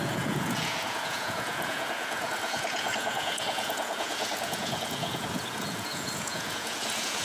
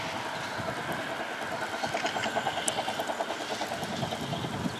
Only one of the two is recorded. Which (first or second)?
second